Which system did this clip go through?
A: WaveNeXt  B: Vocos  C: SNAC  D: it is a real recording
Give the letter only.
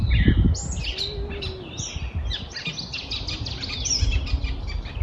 D